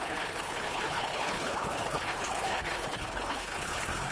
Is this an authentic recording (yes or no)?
no